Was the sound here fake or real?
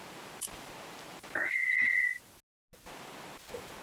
real